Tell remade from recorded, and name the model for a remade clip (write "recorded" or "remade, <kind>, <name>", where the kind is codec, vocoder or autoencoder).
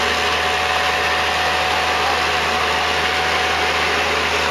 recorded